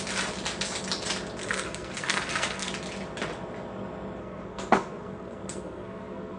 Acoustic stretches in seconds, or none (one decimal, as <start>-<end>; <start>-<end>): 0.0-1.4; 2.7-4.2